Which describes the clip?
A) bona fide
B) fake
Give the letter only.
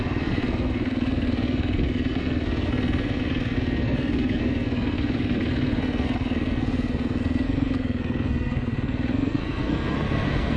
B